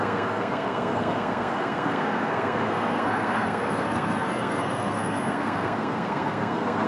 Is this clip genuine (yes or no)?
no